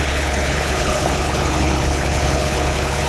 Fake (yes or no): yes